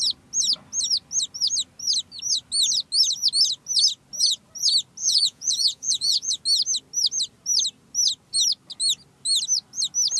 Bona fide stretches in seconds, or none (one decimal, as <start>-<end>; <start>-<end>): 0.0-5.0; 6.4-10.2